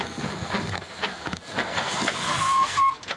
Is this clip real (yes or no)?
no